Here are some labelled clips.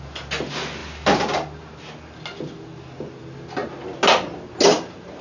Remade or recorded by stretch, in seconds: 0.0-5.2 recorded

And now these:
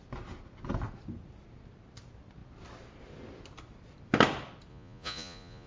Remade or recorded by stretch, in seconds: 0.0-4.7 recorded; 4.7-5.7 remade

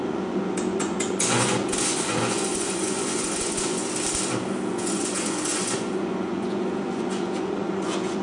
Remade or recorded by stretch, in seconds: 0.0-3.8 remade; 3.8-4.7 recorded; 4.7-8.2 remade

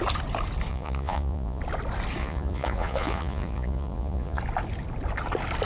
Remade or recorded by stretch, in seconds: 0.0-0.7 recorded; 0.7-1.6 remade; 1.6-2.2 recorded; 2.2-4.4 remade; 4.4-5.7 recorded

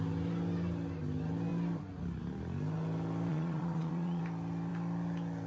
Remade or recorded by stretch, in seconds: 0.0-3.3 recorded; 3.3-4.2 remade; 4.2-5.5 recorded